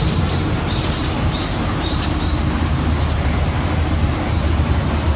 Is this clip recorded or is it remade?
remade